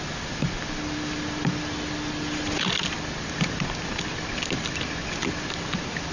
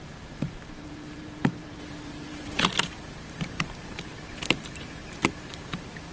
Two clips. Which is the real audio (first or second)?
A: first